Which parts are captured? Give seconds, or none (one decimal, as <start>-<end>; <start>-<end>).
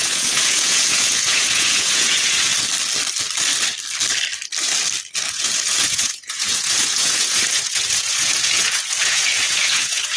2.5-5.3